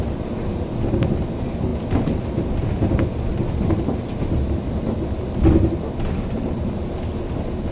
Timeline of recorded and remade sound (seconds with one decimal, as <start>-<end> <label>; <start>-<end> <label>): 0.0-7.7 recorded